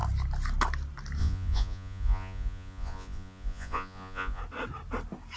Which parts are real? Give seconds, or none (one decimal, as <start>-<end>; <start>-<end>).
0.0-1.2; 4.4-5.4